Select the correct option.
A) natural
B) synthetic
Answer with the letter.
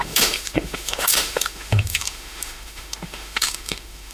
B